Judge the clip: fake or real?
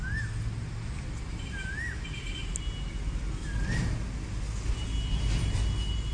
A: real